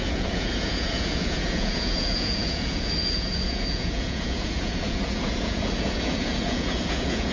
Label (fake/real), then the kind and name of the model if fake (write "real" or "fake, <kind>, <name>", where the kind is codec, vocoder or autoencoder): fake, vocoder, Vocos